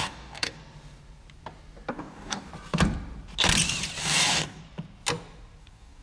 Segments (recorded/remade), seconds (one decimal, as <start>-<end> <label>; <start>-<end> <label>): 0.0-0.6 remade; 0.6-1.9 recorded; 1.9-2.5 remade; 2.5-4.0 recorded; 4.0-4.6 remade; 4.6-5.6 recorded; 5.6-6.0 remade

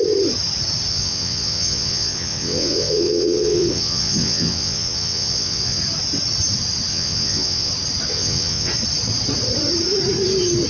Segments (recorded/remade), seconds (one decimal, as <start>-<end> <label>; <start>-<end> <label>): 0.0-0.9 recorded; 0.9-5.8 remade; 5.8-6.9 recorded; 6.9-7.7 remade; 7.7-8.1 recorded; 8.1-8.7 remade; 8.7-10.7 recorded

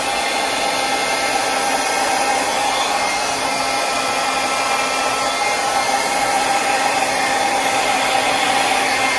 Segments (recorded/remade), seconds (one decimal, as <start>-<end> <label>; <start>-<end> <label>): 0.0-9.2 recorded

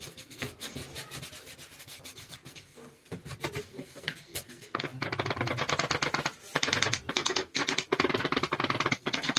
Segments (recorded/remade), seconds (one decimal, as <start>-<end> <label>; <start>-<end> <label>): 0.0-0.8 remade; 0.8-1.8 recorded; 1.8-3.1 remade; 3.1-3.6 recorded; 3.6-4.9 remade; 4.9-7.1 recorded; 7.1-7.6 remade; 7.6-8.9 recorded; 8.9-9.4 remade

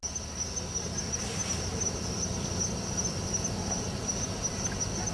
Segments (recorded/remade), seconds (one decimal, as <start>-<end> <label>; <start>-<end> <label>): 0.0-5.1 recorded

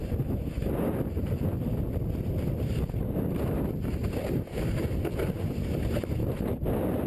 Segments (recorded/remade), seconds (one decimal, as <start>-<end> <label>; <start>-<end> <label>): 0.0-7.1 recorded

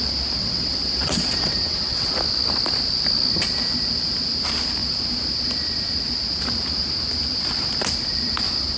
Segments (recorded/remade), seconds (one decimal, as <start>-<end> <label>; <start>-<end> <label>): 0.0-0.4 recorded; 0.4-2.1 remade; 2.1-8.8 recorded

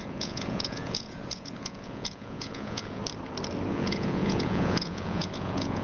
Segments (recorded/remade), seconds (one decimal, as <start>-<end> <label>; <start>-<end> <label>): 0.0-3.0 remade; 3.0-3.7 recorded; 3.7-5.8 remade